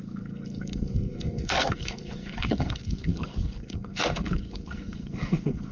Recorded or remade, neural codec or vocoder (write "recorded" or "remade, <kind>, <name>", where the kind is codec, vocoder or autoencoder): remade, codec, SNAC